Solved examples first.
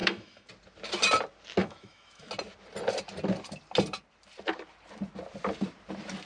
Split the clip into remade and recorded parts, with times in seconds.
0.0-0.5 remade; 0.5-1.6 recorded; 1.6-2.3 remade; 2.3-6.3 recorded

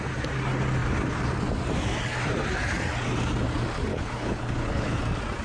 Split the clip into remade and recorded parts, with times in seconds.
0.0-3.9 recorded; 3.9-5.0 remade; 5.0-5.4 recorded

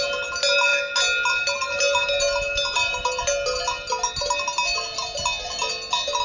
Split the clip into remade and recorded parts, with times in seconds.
0.0-6.2 recorded

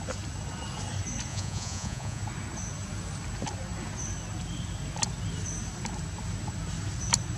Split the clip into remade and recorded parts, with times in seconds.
0.0-1.3 recorded; 1.3-2.2 remade; 2.2-7.4 recorded

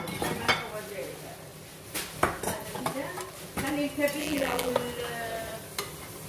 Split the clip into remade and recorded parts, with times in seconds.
0.0-4.2 recorded; 4.2-4.7 remade; 4.7-6.3 recorded

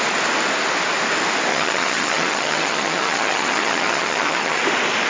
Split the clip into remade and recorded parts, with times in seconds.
0.0-1.5 recorded; 1.5-4.6 remade; 4.6-5.1 recorded